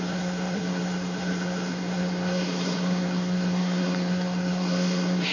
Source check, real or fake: fake